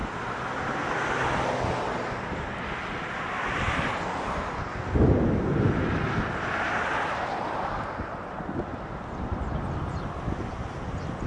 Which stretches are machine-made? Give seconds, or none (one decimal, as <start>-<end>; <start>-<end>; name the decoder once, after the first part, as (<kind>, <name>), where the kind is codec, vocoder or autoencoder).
none